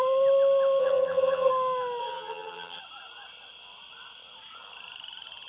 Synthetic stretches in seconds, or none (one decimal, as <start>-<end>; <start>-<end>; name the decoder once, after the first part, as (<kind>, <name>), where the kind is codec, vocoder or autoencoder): 0.8-1.5 (vocoder, HiFi-GAN); 2.0-2.8